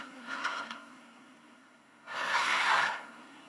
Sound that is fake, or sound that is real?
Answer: fake